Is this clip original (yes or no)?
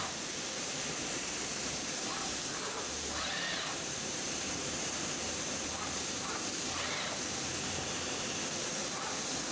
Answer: no